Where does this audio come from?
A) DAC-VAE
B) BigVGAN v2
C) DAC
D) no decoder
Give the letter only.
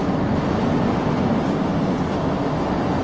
D